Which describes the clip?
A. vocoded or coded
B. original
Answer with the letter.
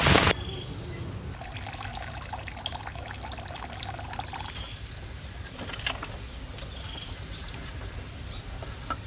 B